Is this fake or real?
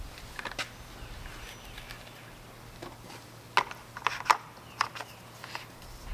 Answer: real